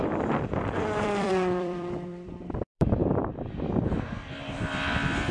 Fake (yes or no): yes